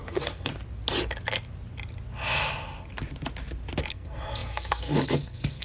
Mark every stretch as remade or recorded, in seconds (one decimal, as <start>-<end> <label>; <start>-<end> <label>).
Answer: 0.0-0.5 remade; 0.5-3.9 recorded; 3.9-5.6 remade